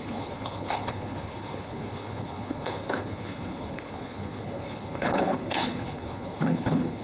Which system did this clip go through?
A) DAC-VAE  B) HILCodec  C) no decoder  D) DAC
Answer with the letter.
B